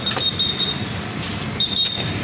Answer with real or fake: real